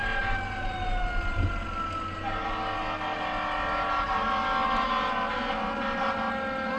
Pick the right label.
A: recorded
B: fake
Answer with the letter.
A